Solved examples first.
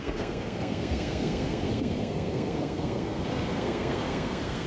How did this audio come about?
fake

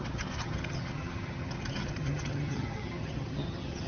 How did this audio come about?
fake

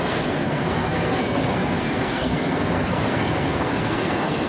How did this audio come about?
fake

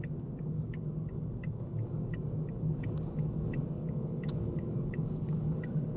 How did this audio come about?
fake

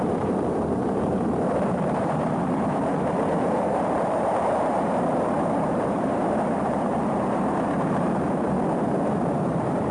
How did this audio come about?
fake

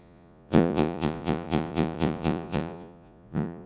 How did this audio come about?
fake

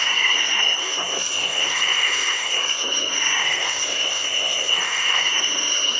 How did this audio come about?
fake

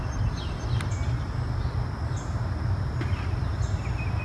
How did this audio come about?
real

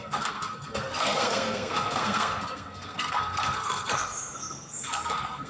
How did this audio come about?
fake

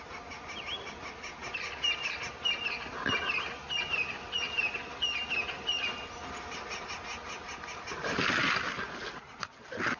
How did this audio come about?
real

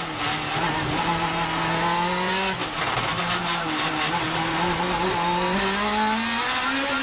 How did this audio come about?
real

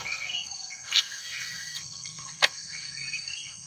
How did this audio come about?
fake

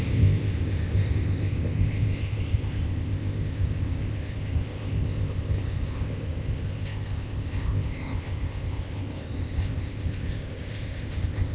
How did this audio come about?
fake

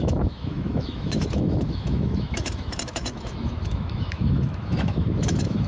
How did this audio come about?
fake